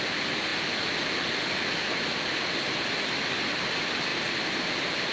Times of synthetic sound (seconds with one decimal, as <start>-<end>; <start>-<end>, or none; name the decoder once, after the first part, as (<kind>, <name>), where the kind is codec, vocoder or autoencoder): none

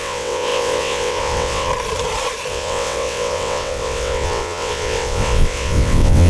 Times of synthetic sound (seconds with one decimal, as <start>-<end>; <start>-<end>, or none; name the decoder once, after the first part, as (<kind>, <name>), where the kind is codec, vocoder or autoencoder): 0.0-1.7 (vocoder, WaveNeXt); 2.5-6.3

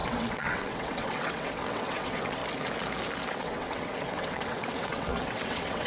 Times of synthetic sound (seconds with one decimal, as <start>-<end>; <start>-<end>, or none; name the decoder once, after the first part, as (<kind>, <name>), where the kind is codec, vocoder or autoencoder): 0.0-2.4 (vocoder, WaveNeXt); 3.3-5.9

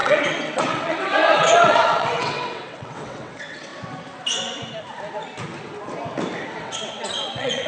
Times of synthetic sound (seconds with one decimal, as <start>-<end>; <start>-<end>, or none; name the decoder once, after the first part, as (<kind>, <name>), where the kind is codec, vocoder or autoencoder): 0.0-3.7 (vocoder, WaveNeXt); 6.6-7.7